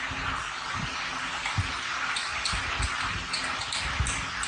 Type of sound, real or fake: real